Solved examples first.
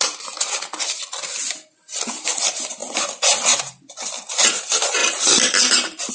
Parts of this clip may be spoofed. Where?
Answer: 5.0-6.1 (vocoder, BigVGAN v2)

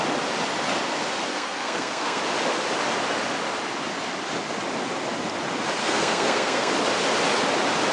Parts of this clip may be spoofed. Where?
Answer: 1.3-2.2 (codec, SNAC); 5.8-6.7